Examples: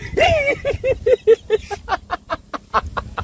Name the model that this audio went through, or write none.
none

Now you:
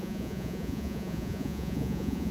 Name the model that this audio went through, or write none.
vocoder, Vocos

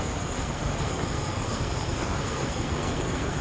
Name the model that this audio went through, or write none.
codec, SNAC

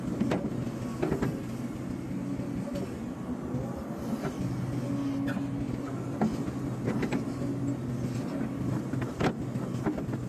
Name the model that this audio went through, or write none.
none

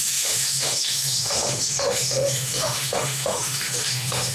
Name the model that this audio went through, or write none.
autoencoder, DAC-VAE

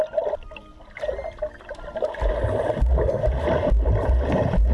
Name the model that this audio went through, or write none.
none